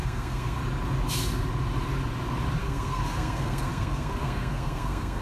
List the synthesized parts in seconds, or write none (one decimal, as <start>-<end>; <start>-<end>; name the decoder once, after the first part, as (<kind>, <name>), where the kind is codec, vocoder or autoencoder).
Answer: 0.0-0.6 (codec, SNAC); 2.6-5.2